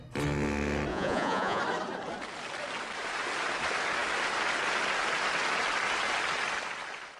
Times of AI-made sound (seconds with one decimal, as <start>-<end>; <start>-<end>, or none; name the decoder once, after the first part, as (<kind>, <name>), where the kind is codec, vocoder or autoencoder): 0.9-1.6 (vocoder, Vocos)